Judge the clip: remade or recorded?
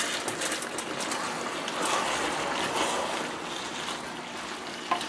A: recorded